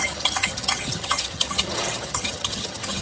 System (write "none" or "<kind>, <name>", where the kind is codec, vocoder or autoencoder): vocoder, HiFi-GAN